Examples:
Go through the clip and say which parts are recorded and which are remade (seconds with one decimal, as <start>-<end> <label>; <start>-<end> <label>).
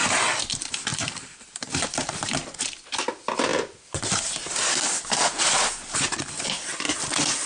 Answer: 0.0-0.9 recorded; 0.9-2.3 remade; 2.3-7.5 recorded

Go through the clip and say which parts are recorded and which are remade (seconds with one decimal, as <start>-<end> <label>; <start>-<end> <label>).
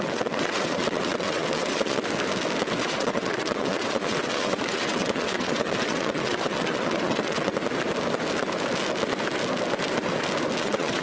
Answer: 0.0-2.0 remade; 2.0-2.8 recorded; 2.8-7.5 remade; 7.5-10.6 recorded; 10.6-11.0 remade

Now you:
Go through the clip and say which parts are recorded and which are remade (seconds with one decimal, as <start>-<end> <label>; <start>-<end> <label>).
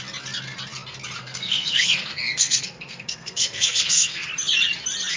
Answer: 0.0-1.2 recorded; 1.2-4.3 remade; 4.3-5.2 recorded